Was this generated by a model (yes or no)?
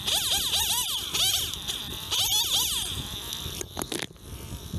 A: no